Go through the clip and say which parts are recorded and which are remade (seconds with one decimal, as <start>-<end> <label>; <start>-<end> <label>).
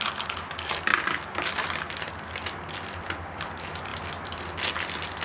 0.0-5.2 recorded